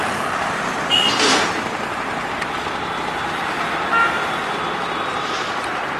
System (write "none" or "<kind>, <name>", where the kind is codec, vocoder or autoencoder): none